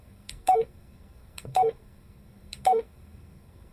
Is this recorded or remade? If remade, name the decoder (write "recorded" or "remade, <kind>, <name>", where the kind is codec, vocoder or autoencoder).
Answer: remade, codec, SNAC